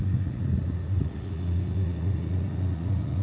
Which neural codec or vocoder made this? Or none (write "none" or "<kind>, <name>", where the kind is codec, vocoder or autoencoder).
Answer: vocoder, Vocos